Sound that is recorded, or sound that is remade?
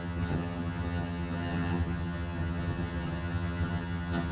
remade